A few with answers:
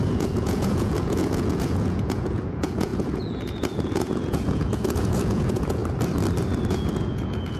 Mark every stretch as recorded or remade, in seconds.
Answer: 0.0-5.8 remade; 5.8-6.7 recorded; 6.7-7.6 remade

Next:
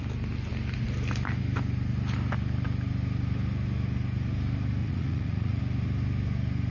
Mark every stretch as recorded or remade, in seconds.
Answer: 0.0-4.8 recorded; 4.8-5.6 remade; 5.6-6.7 recorded

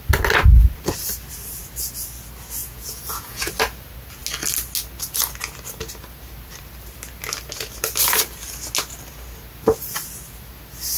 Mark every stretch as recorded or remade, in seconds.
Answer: 0.0-2.6 recorded; 2.6-3.5 remade; 3.5-11.0 recorded

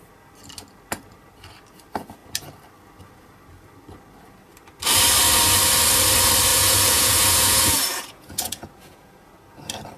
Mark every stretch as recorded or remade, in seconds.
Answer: 0.0-6.5 recorded; 6.5-9.3 remade; 9.3-10.0 recorded

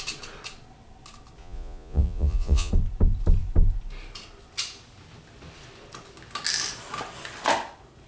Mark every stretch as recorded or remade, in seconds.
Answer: 0.0-1.4 recorded; 1.4-2.7 remade; 2.7-8.1 recorded

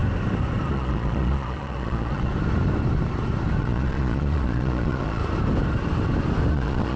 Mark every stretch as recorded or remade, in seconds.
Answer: 0.0-0.7 recorded; 0.7-2.3 remade; 2.3-3.6 recorded; 3.6-5.2 remade; 5.2-6.5 recorded; 6.5-7.0 remade

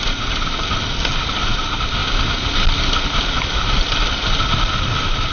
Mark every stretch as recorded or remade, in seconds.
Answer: 0.0-5.3 recorded

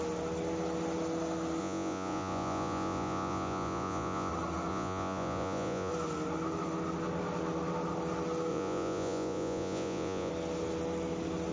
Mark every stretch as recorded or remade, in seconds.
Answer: 0.0-1.6 recorded; 1.6-4.3 remade; 4.3-4.7 recorded; 4.7-5.9 remade; 5.9-8.5 recorded; 8.5-10.3 remade; 10.3-11.5 recorded